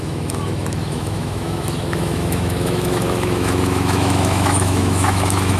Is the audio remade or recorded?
remade